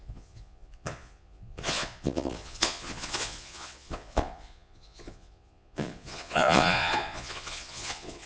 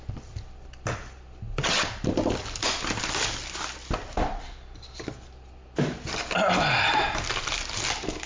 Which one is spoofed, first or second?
first